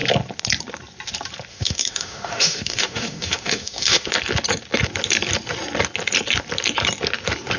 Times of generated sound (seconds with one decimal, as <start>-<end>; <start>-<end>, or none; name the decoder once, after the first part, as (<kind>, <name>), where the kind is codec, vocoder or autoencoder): 1.5-4.1 (autoencoder, DAC-VAE)